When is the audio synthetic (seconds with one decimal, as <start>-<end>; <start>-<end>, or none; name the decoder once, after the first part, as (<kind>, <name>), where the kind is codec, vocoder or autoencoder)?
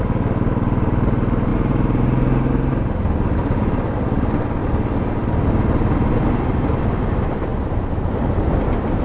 7.5-8.1 (vocoder, BigVGAN v2)